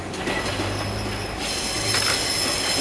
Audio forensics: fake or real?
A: real